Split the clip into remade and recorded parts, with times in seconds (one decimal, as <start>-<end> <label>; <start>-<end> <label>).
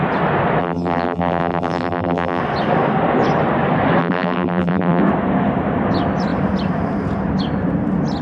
0.0-0.6 recorded; 0.6-2.4 remade; 2.4-4.0 recorded; 4.0-5.0 remade; 5.0-8.2 recorded